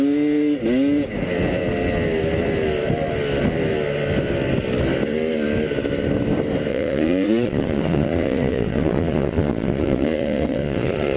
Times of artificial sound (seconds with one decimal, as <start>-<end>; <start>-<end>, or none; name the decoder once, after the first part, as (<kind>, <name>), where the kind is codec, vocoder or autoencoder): 6.7-11.2 (vocoder, Vocos)

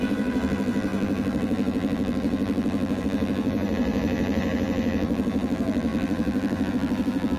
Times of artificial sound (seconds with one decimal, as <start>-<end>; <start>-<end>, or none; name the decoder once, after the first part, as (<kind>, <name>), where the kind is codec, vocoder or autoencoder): 0.0-7.4 (vocoder, BigVGAN v2)

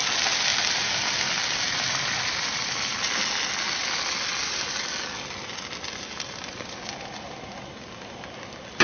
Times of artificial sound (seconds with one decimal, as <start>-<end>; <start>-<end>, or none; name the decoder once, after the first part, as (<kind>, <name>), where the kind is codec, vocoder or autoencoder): 0.5-3.2 (vocoder, BigVGAN v2)

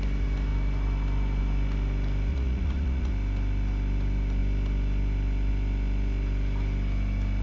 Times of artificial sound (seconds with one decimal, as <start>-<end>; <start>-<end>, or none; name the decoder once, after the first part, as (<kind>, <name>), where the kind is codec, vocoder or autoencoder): 2.3-3.1 (vocoder, Vocos)

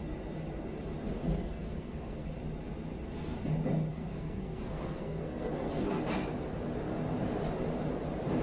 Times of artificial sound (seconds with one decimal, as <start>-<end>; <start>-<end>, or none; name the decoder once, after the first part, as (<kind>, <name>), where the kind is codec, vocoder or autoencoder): 1.4-2.3 (codec, SNAC); 3.9-6.0

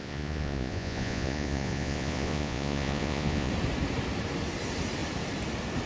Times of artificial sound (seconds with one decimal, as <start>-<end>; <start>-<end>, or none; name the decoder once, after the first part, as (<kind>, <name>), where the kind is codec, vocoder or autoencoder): 0.0-3.5 (vocoder, Vocos)

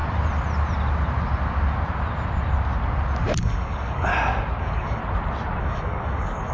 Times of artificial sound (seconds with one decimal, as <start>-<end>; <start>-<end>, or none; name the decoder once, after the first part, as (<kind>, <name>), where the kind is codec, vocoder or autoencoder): 3.4-4.1 (codec, DAC); 4.6-5.0; 5.6-6.5

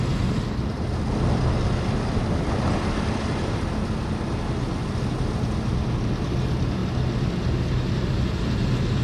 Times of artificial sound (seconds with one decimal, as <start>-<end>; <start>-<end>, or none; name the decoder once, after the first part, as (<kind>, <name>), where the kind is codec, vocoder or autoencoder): none